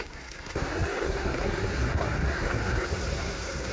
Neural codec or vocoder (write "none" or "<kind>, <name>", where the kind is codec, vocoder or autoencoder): codec, SNAC